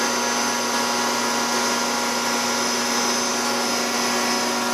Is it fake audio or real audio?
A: real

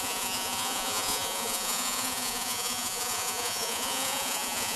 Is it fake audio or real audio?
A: fake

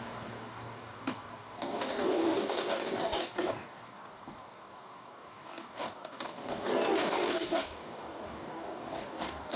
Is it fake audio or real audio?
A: fake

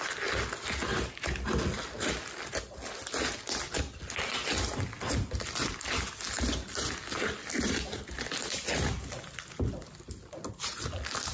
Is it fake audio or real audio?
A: real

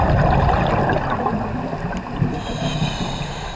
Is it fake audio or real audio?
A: real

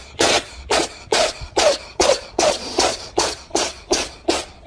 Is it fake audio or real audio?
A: fake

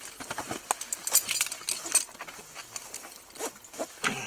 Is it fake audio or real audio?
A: real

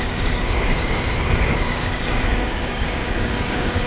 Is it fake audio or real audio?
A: fake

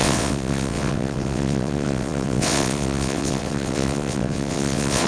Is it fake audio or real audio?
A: fake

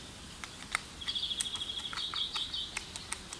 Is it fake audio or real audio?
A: real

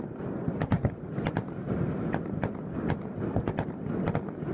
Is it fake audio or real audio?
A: real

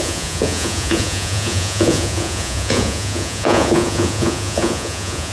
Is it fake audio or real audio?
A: fake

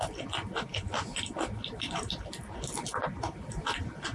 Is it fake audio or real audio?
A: real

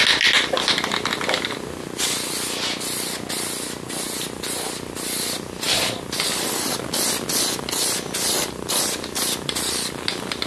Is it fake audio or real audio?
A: real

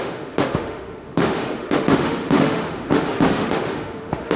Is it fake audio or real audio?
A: fake